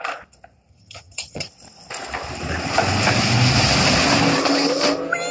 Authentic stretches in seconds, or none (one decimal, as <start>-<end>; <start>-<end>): 0.0-0.7; 1.5-5.3